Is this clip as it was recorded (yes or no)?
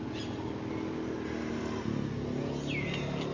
yes